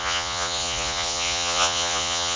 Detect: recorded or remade remade